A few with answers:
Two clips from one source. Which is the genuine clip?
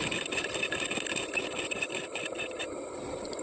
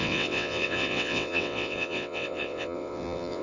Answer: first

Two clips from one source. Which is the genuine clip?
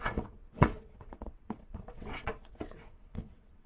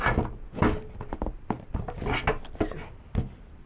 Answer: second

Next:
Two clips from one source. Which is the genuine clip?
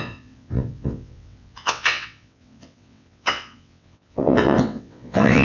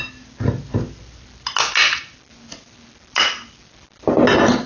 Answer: second